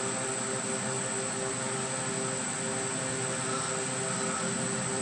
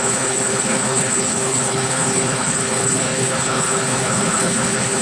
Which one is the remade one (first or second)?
second